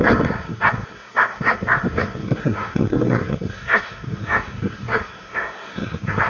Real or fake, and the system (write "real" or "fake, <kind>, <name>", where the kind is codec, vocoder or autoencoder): fake, codec, SNAC